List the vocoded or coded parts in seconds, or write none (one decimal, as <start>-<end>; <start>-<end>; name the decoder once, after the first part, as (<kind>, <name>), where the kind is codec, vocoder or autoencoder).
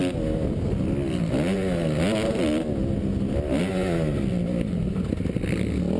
none